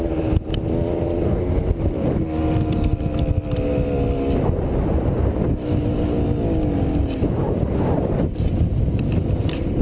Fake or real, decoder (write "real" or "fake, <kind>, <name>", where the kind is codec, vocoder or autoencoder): real